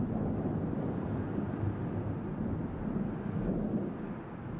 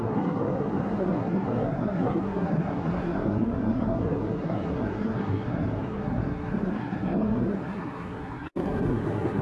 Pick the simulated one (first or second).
second